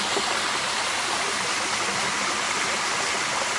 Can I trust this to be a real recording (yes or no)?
yes